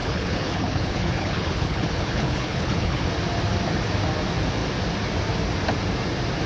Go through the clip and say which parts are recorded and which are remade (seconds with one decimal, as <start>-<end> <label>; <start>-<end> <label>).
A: 0.0-3.0 remade; 3.0-6.5 recorded